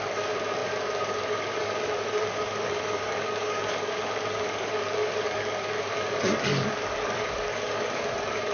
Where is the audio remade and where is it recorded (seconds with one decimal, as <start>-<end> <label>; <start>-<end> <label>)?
0.0-8.5 remade